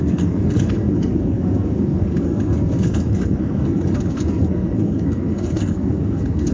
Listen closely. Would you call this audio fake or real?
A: fake